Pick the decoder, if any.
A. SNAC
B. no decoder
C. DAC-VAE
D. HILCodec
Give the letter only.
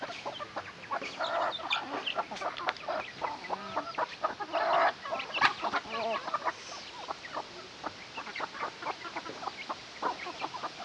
B